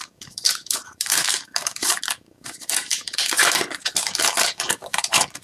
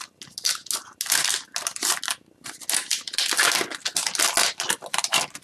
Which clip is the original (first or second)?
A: second